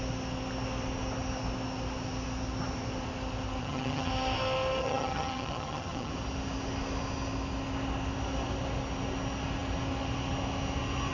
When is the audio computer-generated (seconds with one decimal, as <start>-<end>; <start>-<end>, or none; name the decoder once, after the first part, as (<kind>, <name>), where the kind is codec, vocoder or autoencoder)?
3.6-4.1 (vocoder, HiFi-GAN); 4.8-6.1